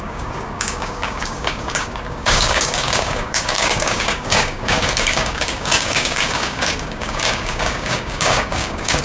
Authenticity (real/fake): fake